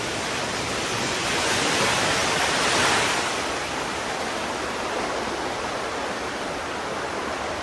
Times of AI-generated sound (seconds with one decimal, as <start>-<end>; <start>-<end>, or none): 0.9-1.6